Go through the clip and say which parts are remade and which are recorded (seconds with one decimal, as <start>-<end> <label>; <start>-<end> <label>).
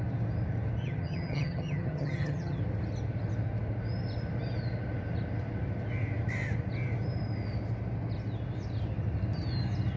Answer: 0.0-0.8 recorded; 0.8-2.6 remade; 2.6-10.0 recorded